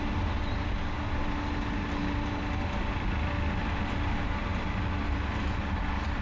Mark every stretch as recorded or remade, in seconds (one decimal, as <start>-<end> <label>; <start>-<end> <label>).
0.0-6.2 recorded